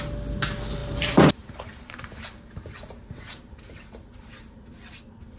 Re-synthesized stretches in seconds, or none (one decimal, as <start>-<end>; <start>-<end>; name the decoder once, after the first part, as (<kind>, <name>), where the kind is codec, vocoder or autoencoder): 0.8-3.4 (vocoder, BigVGAN v2)